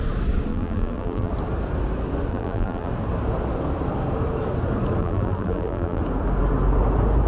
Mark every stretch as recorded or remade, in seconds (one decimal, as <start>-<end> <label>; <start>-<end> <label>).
0.0-0.5 recorded; 0.5-1.3 remade; 1.3-2.3 recorded; 2.3-2.9 remade; 2.9-5.0 recorded; 5.0-6.0 remade; 6.0-7.3 recorded